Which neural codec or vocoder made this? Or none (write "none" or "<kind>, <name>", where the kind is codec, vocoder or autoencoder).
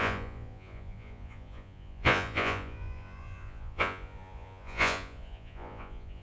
vocoder, Vocos